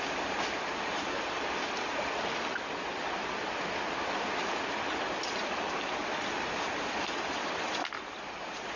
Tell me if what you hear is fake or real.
real